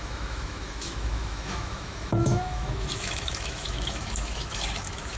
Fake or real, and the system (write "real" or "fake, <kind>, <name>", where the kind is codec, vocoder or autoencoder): fake, autoencoder, DAC-VAE